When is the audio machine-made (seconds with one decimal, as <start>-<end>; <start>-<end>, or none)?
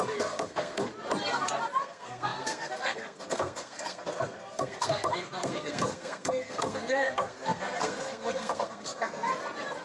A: 0.0-0.9; 1.8-9.3